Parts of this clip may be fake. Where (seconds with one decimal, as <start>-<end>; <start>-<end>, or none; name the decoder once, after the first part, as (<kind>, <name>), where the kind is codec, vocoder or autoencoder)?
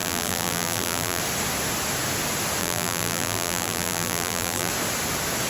0.0-1.2 (vocoder, BigVGAN v2); 2.6-4.7